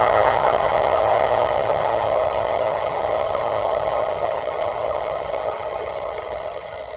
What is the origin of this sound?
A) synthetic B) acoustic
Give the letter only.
A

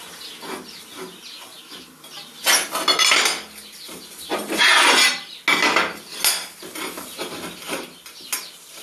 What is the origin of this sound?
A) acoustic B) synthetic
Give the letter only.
A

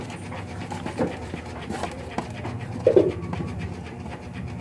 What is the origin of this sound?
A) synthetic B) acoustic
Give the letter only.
B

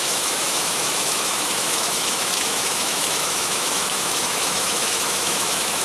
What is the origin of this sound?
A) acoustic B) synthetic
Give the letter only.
B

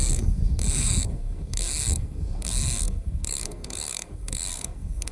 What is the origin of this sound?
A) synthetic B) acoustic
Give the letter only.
A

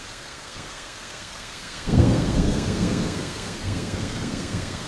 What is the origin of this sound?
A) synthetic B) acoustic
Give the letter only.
A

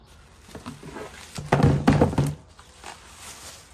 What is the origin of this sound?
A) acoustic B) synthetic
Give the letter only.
A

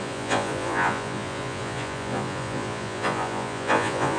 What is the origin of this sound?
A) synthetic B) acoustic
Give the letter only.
A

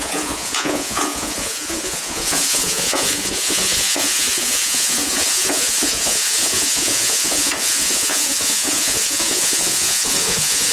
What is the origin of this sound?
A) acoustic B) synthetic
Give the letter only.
B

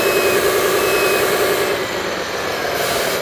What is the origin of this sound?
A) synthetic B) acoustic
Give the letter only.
B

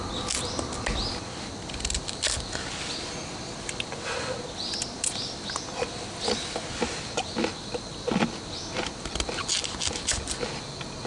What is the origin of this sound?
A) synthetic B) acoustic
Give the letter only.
B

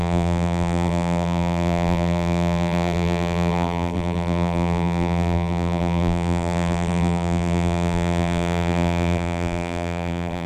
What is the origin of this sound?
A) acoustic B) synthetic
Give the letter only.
B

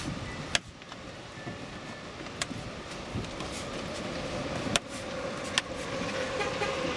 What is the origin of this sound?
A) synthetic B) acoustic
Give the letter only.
B